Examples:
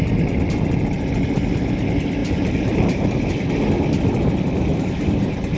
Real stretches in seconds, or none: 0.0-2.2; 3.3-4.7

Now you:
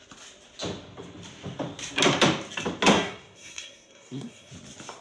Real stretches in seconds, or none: 0.0-2.9; 4.5-5.0

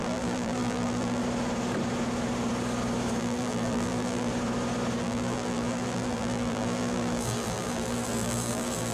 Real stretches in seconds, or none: 1.2-3.2; 4.3-5.0